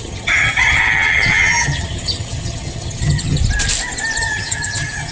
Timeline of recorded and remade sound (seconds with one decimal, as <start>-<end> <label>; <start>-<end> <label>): 0.0-3.4 remade; 3.4-4.2 recorded; 4.2-5.1 remade